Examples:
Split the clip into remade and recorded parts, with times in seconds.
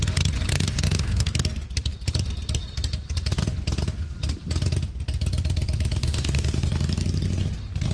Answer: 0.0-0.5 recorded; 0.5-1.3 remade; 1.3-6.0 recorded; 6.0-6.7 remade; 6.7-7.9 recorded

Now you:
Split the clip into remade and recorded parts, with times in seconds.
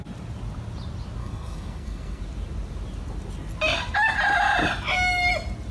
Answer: 0.0-1.2 recorded; 1.2-2.2 remade; 2.2-5.7 recorded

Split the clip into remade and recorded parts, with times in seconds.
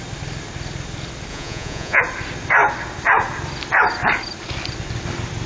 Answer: 0.0-1.3 recorded; 1.3-2.0 remade; 2.0-5.5 recorded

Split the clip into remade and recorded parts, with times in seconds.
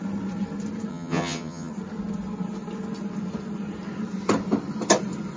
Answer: 0.0-0.9 recorded; 0.9-1.7 remade; 1.7-5.4 recorded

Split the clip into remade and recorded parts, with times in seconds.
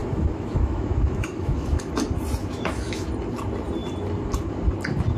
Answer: 0.0-1.9 remade; 1.9-2.4 recorded; 2.4-3.1 remade; 3.1-5.2 recorded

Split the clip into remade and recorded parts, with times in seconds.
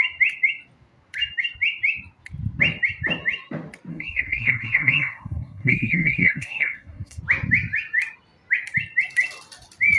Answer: 0.0-3.9 recorded; 3.9-7.2 remade; 7.2-10.0 recorded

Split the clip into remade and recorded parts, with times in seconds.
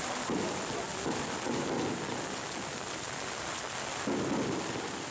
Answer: 0.0-5.1 recorded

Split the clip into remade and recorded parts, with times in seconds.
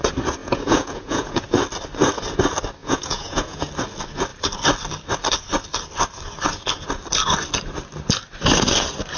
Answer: 0.0-0.4 recorded; 0.4-1.4 remade; 1.4-2.8 recorded; 2.8-3.7 remade; 3.7-9.2 recorded